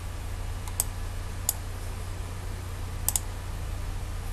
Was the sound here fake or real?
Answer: real